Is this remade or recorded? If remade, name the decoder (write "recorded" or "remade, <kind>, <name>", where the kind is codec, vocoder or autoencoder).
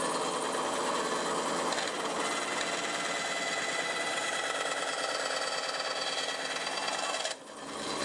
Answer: recorded